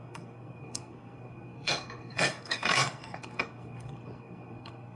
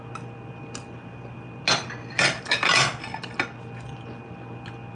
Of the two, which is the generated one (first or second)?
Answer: first